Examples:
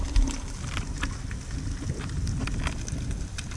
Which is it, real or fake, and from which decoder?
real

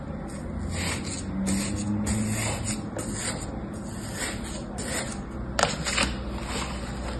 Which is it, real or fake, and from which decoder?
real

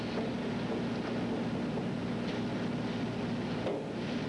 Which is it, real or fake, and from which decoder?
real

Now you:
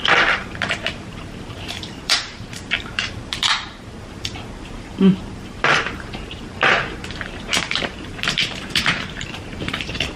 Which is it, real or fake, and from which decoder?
fake, vocoder, BigVGAN v2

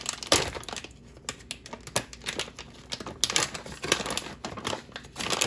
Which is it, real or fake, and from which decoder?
real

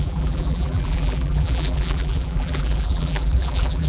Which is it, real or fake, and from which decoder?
fake, vocoder, BigVGAN v2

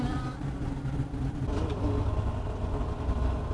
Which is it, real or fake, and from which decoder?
real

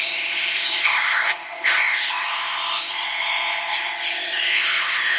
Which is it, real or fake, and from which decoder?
fake, codec, ZipCodec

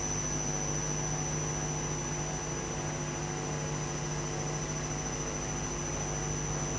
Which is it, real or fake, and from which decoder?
real